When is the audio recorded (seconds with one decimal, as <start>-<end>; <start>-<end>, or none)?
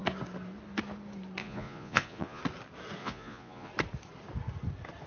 0.0-1.4; 2.4-3.0; 3.7-5.1